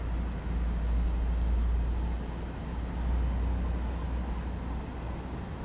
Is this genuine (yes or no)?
yes